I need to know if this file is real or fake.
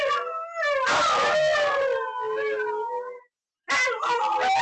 real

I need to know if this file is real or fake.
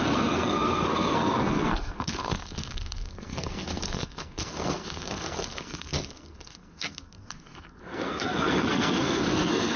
fake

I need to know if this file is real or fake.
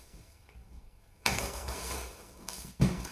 fake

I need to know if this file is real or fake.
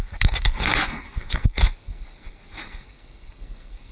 fake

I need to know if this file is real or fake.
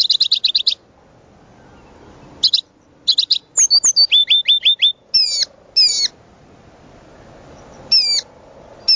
real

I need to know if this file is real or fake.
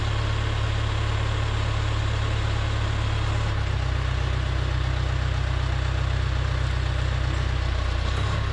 real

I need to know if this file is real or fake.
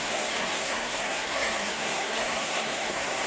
fake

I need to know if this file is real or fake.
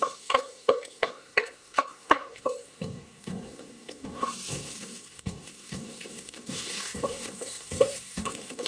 fake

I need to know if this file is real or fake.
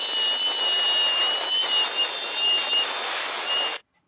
real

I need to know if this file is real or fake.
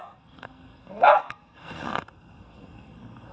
fake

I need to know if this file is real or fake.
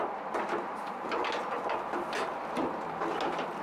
real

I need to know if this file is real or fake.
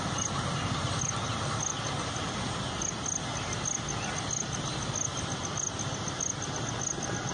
real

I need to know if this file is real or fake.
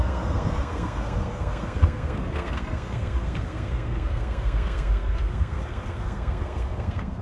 fake